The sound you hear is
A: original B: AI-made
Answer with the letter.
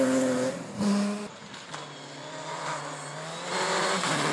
A